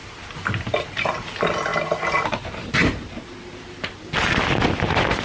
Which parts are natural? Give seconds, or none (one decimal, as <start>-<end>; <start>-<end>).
0.0-0.7; 1.7-4.8